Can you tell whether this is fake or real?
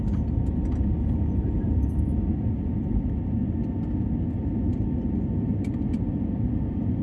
real